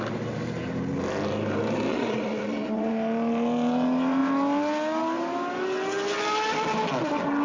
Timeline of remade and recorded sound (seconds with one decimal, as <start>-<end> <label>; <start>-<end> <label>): 0.0-1.9 recorded; 1.9-2.9 remade; 2.9-7.4 recorded